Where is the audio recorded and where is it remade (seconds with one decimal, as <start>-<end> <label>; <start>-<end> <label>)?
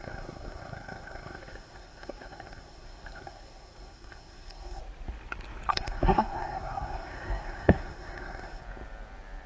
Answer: 0.0-4.8 remade; 4.8-5.7 recorded; 5.7-8.6 remade; 8.6-9.5 recorded